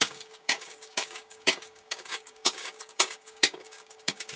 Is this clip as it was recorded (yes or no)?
no